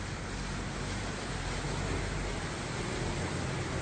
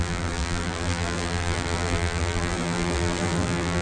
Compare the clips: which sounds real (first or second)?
first